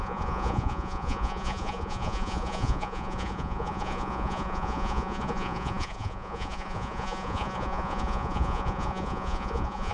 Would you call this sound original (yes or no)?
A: no